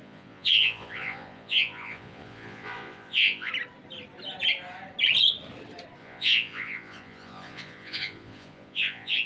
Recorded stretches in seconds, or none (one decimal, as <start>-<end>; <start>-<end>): 3.5-6.0